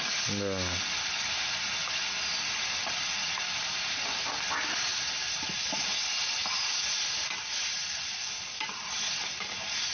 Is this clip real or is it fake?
real